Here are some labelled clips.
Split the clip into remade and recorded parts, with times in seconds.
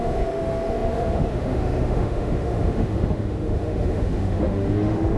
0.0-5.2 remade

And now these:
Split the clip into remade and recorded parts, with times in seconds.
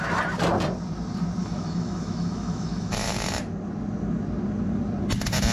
0.0-1.4 recorded; 1.4-3.4 remade; 3.4-5.5 recorded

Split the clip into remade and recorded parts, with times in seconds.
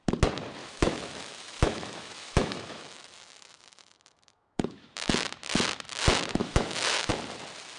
0.0-0.6 recorded; 0.6-5.3 remade; 5.3-6.4 recorded; 6.4-7.1 remade; 7.1-7.8 recorded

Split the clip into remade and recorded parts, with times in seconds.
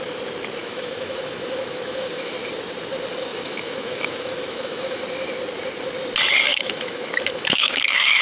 0.0-0.6 recorded; 0.6-2.3 remade; 2.3-3.3 recorded; 3.3-5.0 remade; 5.0-6.5 recorded; 6.5-8.2 remade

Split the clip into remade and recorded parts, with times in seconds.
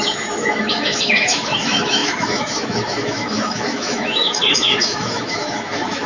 0.0-6.1 remade